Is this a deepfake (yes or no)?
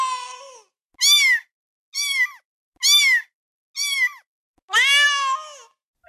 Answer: no